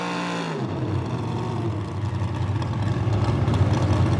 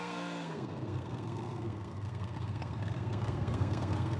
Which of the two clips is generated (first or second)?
second